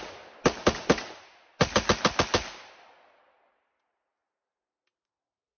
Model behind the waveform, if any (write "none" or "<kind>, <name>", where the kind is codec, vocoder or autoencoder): none